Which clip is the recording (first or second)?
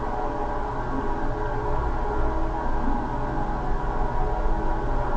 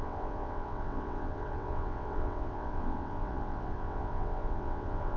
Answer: first